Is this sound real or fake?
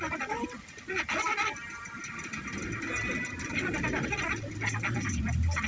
real